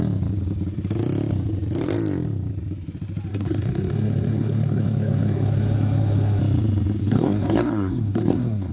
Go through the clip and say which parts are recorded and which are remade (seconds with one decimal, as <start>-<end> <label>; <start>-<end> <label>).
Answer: 0.0-3.3 recorded; 3.3-6.4 remade; 6.4-7.0 recorded; 7.0-8.7 remade